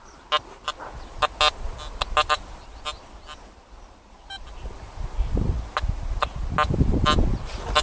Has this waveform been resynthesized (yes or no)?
no